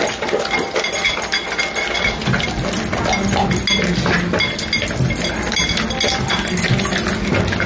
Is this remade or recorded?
recorded